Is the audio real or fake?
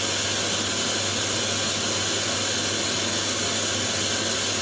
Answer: real